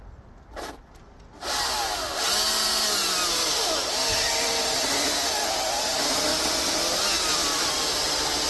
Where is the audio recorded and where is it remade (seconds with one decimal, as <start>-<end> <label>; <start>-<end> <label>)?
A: 0.0-8.5 recorded